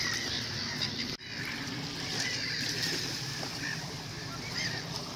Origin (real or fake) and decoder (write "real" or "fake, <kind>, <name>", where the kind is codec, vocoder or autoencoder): real